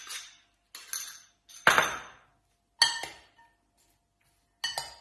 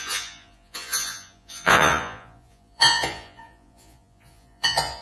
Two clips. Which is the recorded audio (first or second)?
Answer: first